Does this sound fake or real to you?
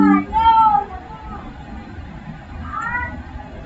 real